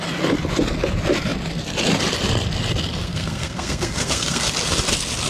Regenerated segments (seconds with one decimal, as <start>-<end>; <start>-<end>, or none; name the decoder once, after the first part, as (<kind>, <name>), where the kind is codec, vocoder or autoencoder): 3.0-4.5 (codec, SNAC)